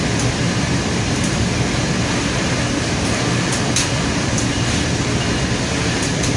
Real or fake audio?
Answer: real